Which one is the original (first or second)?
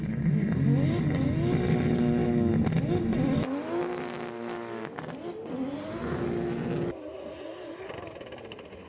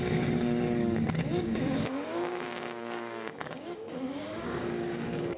first